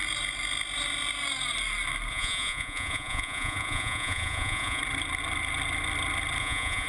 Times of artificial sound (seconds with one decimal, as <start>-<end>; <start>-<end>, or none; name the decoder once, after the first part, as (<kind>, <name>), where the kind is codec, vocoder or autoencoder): 2.1-4.8 (vocoder, Vocos); 6.4-6.9